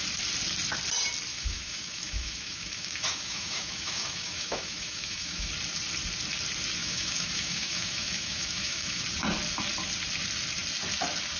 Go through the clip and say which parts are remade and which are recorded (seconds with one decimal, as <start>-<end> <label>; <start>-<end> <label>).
0.0-1.3 recorded; 1.3-5.5 remade; 5.5-6.8 recorded; 6.8-9.0 remade; 9.0-11.4 recorded